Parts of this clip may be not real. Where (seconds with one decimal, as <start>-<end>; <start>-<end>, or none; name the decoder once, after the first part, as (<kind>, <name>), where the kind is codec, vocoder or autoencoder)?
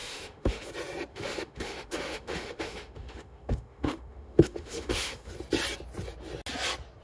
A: 0.0-0.7 (autoencoder, DAC-VAE); 1.1-5.3